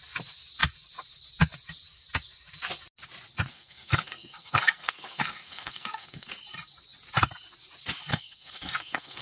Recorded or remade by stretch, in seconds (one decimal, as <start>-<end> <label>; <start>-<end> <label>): 0.0-3.5 recorded; 3.5-6.3 remade; 6.3-8.1 recorded; 8.1-9.2 remade